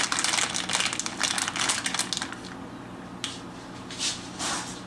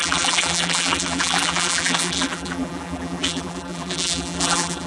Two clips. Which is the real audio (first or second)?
first